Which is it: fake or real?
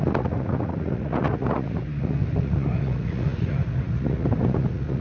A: fake